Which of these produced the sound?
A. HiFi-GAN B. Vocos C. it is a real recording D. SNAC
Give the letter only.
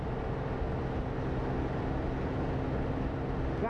C